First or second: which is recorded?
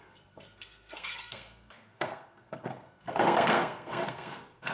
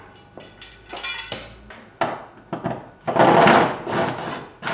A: second